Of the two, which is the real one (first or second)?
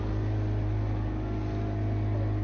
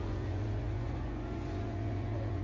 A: first